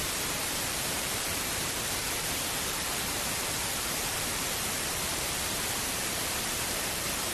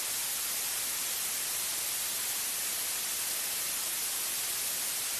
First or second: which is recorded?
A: second